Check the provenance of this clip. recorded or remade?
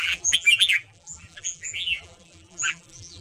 remade